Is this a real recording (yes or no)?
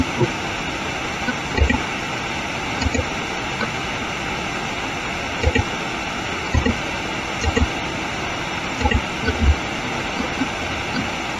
yes